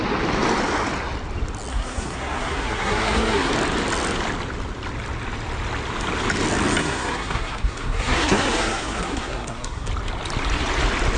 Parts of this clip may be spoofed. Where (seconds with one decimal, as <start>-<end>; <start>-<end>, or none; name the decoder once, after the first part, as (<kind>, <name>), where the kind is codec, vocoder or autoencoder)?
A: 1.7-3.5 (codec, SNAC); 6.8-9.9